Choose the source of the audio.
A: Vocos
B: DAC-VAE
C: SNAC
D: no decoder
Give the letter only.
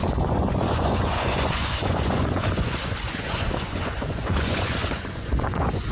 A